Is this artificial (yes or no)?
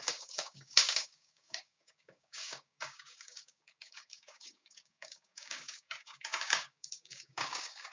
yes